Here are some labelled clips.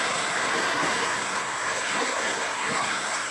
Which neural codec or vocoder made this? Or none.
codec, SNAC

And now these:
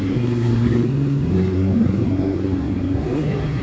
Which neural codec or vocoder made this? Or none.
codec, SNAC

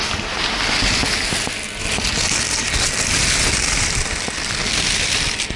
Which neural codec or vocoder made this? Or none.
none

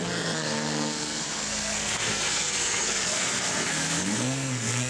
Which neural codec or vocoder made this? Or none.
codec, SNAC